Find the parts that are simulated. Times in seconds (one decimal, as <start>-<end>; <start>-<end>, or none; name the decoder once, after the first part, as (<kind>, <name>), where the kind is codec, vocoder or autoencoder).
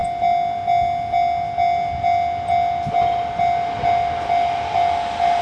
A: none